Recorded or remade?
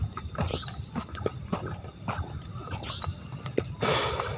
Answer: recorded